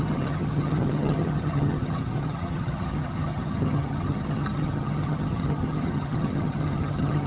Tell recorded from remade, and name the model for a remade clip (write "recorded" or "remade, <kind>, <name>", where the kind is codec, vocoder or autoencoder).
remade, vocoder, HiFi-GAN